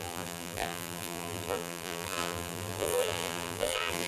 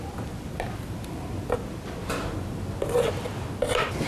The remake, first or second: first